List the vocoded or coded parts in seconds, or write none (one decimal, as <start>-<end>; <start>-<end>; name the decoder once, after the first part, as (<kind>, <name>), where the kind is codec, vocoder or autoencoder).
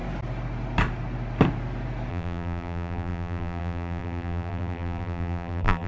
2.1-5.9 (vocoder, BigVGAN v2)